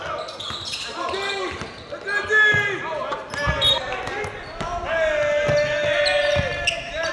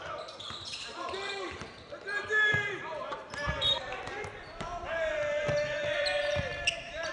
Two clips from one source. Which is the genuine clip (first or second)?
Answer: first